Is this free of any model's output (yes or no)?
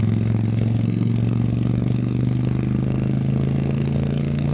no